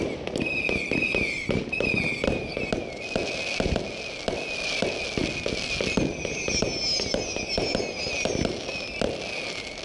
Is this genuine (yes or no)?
yes